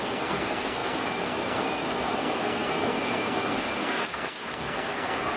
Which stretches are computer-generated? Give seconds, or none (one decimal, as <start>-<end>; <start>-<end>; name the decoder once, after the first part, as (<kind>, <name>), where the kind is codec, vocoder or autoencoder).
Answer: 0.0-5.4 (codec, SNAC)